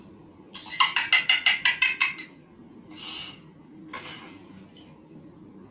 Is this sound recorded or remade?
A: recorded